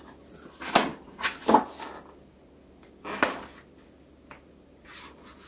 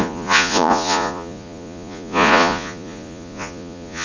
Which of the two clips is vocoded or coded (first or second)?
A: second